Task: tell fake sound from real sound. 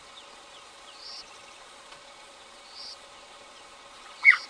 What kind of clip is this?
fake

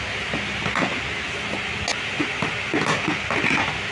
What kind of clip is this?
real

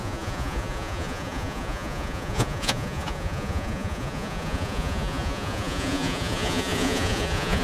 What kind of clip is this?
fake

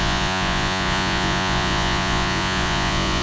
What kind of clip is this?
fake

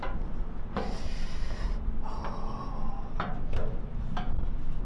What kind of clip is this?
real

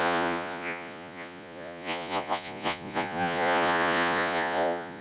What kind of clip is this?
fake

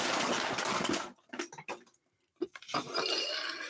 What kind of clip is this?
real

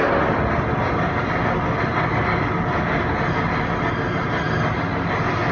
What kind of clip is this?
real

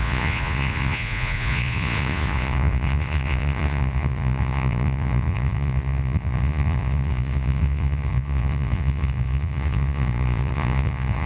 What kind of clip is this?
fake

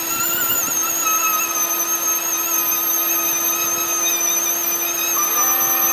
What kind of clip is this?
real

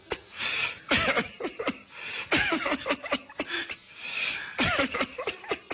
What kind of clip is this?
real